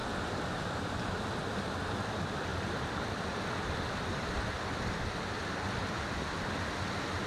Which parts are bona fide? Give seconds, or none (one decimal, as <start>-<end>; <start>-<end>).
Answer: 0.0-7.3